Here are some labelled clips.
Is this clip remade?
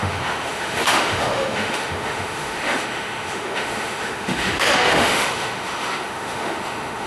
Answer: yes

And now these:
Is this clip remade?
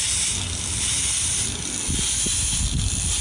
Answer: no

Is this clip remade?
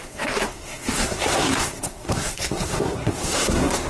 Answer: yes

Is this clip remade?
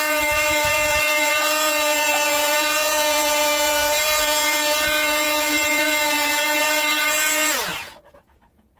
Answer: yes